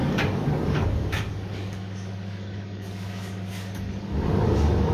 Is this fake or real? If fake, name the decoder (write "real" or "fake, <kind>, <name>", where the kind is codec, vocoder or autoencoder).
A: fake, codec, DAC